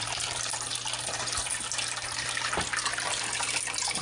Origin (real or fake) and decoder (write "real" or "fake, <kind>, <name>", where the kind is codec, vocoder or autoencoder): real